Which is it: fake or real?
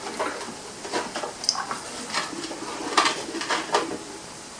real